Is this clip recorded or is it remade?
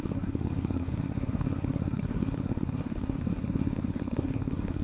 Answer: remade